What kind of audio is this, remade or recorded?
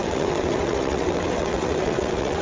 remade